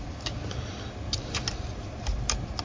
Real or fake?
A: real